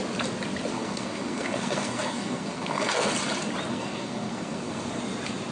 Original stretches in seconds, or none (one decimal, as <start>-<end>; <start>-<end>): 0.0-0.7; 3.1-3.7; 5.0-5.5